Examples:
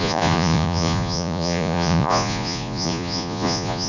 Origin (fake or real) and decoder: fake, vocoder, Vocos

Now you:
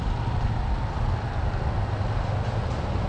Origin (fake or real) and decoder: real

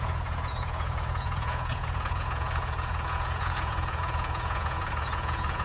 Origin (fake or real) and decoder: fake, vocoder, Vocos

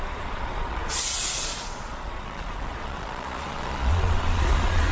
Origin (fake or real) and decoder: fake, vocoder, Vocos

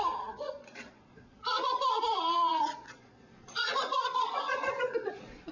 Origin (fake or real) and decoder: fake, vocoder, Vocos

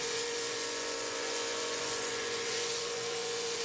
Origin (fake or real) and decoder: fake, vocoder, Vocos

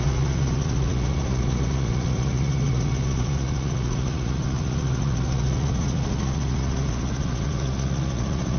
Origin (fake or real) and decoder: fake, vocoder, Vocos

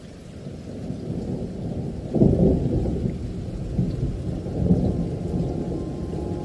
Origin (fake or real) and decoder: real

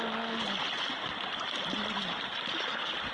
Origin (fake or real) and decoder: real